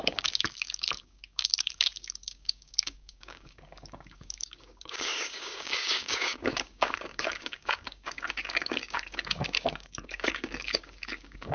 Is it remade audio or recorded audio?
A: remade